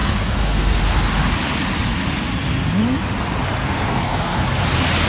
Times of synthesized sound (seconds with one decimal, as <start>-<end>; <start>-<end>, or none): 0.0-0.8; 3.6-4.6

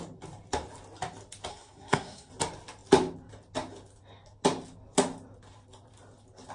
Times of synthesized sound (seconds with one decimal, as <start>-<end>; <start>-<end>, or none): 1.5-2.3

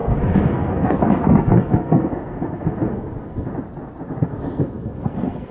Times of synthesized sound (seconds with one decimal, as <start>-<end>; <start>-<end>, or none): 0.0-3.5; 4.2-5.5

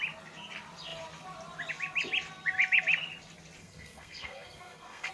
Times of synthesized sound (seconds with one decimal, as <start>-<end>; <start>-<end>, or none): 3.6-5.1

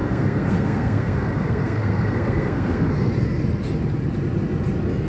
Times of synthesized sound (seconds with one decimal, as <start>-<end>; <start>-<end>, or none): 0.0-3.1

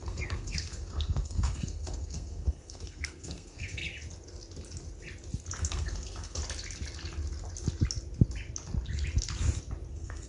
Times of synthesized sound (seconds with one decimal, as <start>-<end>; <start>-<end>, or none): 0.0-3.8; 5.6-6.4; 9.9-10.3

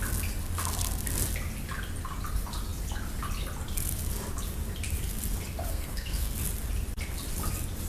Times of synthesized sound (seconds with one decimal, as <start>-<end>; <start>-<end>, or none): 5.7-6.3